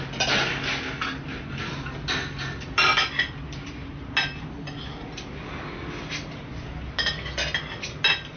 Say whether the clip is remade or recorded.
recorded